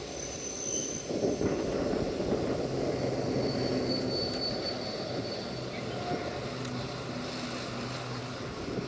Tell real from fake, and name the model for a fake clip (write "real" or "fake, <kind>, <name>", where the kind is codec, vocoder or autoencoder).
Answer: real